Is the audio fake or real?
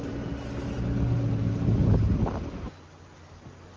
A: real